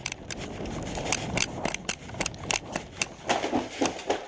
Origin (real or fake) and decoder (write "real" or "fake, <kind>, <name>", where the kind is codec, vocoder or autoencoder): real